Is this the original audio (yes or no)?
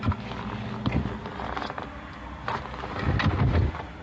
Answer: yes